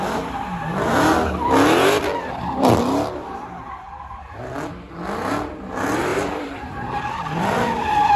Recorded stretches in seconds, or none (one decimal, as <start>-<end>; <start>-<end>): 0.0-6.1